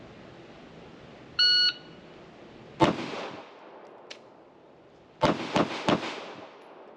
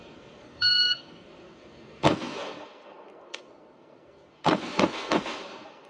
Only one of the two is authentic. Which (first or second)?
first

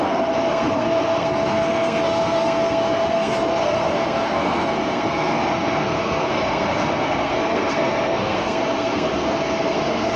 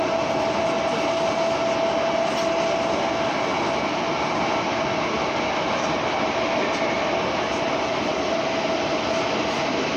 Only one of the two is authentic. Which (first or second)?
second